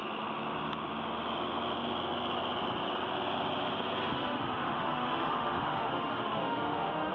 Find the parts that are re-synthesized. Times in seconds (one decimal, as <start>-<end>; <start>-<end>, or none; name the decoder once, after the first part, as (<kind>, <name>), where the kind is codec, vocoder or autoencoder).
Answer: 4.1-7.1 (autoencoder, DAC-VAE)